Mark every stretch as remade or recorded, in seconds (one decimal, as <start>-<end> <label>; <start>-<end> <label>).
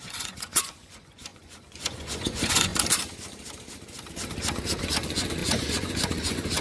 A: 0.0-2.7 remade; 2.7-4.8 recorded; 4.8-6.6 remade